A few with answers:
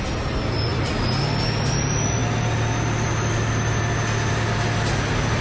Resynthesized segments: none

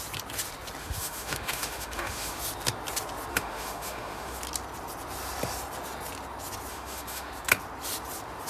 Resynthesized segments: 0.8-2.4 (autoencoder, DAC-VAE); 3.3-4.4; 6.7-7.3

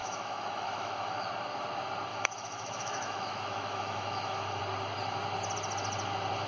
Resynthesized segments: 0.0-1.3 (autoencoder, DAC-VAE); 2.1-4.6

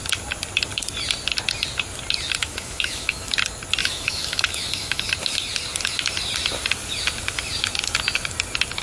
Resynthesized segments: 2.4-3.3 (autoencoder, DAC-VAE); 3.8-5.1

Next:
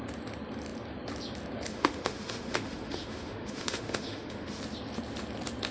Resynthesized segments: 1.7-4.6 (autoencoder, DAC-VAE)

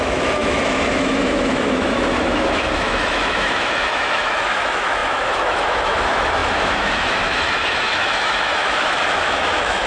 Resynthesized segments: 0.0-9.9 (autoencoder, DAC-VAE)

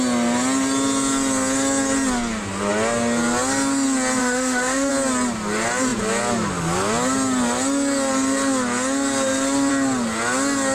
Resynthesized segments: 4.2-4.9 (autoencoder, DAC-VAE)